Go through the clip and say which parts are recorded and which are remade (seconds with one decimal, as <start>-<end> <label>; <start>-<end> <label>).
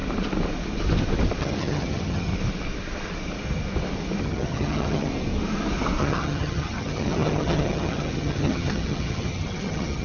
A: 0.0-1.4 recorded; 1.4-2.3 remade; 2.3-4.2 recorded; 4.2-5.1 remade; 5.1-6.0 recorded; 6.0-10.0 remade